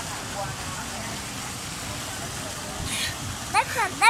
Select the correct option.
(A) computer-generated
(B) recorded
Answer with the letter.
B